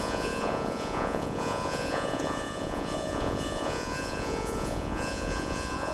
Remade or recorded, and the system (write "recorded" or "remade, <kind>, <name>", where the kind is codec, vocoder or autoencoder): remade, vocoder, Vocos